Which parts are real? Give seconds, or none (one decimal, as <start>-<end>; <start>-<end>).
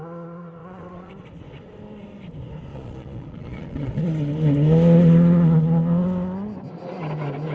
0.0-0.6; 1.1-2.7; 4.0-7.5